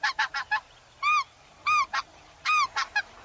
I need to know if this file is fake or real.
real